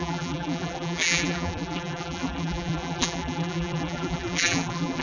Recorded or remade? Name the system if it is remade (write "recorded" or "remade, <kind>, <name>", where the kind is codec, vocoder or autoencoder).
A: remade, vocoder, BigVGAN v2